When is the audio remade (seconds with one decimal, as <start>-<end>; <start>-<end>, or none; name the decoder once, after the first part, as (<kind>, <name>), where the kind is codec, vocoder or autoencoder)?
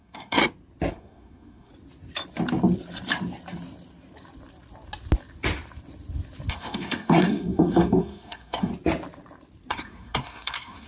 0.0-0.4 (codec, SNAC); 0.9-1.7; 6.5-8.7; 9.7-10.9